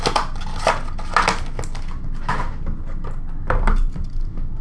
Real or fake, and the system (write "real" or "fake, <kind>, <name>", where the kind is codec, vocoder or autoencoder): real